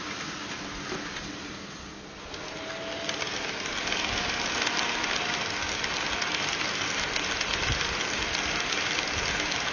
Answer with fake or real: real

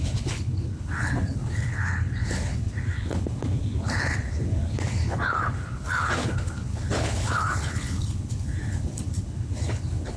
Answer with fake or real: fake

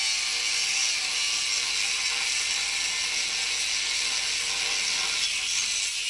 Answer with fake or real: real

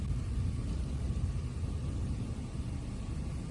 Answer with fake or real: real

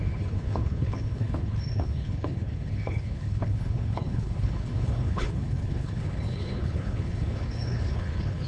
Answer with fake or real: fake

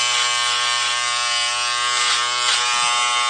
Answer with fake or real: real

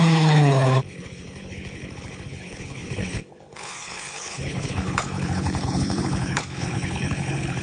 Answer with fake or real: fake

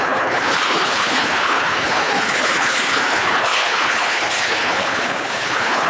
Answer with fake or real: fake